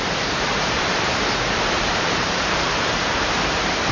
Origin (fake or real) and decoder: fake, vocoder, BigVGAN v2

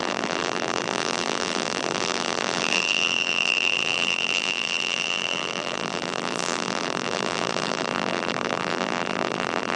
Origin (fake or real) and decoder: fake, vocoder, BigVGAN v2